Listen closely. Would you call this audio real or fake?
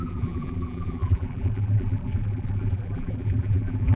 fake